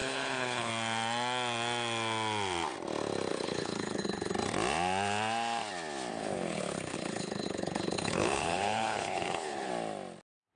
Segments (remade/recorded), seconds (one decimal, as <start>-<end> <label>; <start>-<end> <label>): 0.0-0.7 remade; 0.7-3.3 recorded; 3.3-4.3 remade; 4.3-6.1 recorded; 6.1-9.7 remade; 9.7-10.6 recorded